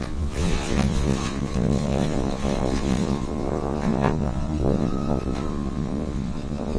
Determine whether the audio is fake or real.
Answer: fake